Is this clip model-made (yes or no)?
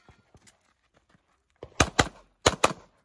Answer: no